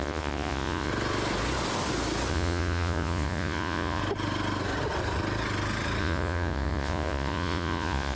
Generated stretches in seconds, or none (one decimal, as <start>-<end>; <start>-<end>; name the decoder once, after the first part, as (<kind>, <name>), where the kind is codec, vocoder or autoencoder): 0.0-0.9 (vocoder, Vocos); 2.3-4.0; 6.0-8.2